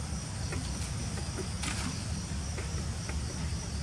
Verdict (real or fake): real